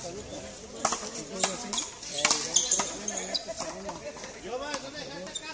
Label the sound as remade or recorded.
recorded